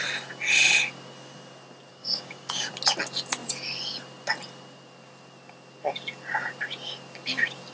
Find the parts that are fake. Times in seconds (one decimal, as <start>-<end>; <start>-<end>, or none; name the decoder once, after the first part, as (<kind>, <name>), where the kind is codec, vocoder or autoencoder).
1.9-2.7 (codec, DAC)